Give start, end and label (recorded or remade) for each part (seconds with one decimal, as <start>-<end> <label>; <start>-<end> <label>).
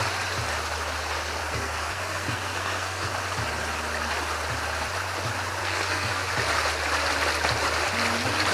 0.0-1.4 recorded; 1.4-3.1 remade; 3.1-5.6 recorded; 5.6-6.3 remade; 6.3-8.5 recorded